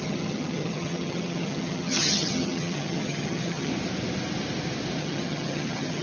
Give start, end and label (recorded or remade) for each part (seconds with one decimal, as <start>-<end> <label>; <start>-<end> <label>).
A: 0.0-3.7 remade; 3.7-5.0 recorded; 5.0-6.0 remade